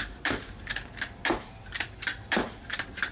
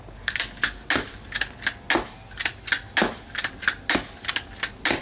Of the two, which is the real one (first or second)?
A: second